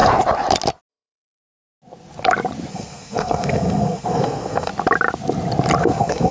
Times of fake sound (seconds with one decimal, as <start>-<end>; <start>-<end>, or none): 0.9-1.4; 2.7-4.7; 5.8-6.3